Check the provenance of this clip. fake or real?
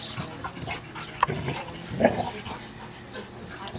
real